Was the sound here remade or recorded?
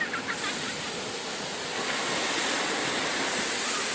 recorded